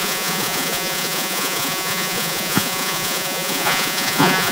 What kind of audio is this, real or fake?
fake